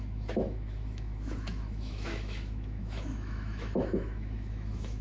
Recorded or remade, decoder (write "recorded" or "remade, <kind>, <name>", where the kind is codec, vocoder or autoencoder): remade, autoencoder, DAC-VAE